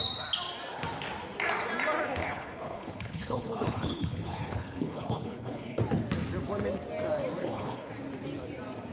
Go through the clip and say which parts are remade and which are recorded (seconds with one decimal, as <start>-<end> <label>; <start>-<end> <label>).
0.0-2.2 recorded; 2.2-5.8 remade; 5.8-7.4 recorded; 7.4-7.9 remade; 7.9-8.9 recorded